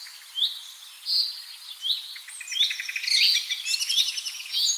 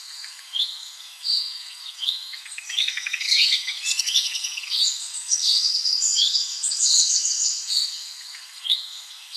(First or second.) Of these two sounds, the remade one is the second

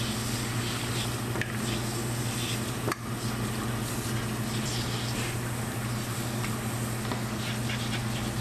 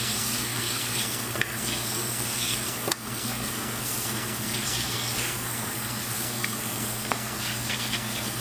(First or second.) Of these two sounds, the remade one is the second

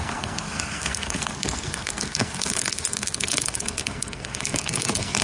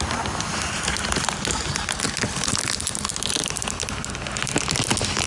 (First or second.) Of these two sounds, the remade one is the first